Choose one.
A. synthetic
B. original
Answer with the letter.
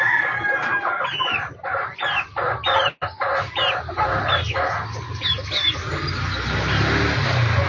B